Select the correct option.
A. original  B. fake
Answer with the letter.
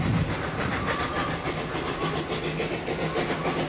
A